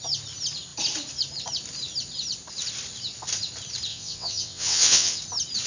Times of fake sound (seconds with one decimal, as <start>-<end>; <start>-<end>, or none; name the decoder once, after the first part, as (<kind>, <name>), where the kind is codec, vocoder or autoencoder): 3.9-5.2 (vocoder, WaveNeXt)